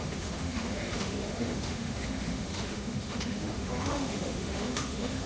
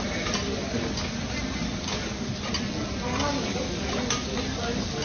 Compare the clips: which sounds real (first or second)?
second